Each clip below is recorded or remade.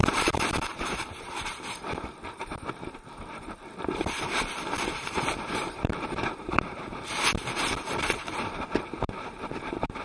remade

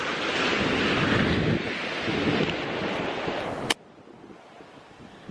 recorded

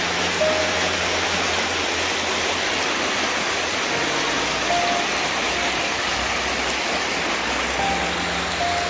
recorded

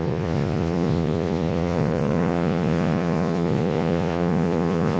remade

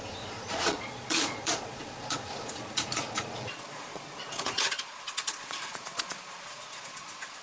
remade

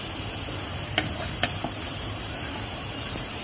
remade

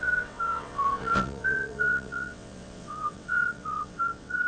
remade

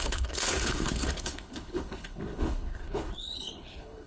remade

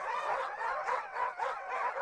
remade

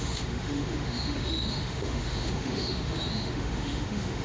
remade